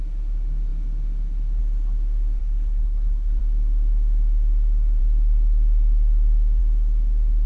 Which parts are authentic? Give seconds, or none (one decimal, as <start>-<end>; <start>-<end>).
0.0-2.4; 3.4-7.5